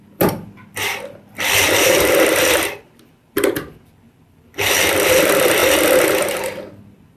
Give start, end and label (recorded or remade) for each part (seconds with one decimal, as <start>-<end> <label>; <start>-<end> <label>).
0.0-7.2 remade